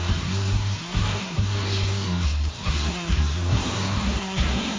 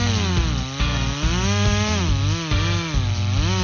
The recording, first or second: second